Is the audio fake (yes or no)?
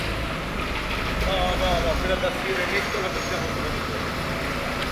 no